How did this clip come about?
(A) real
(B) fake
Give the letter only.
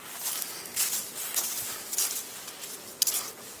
A